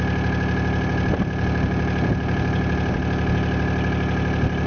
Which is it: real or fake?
real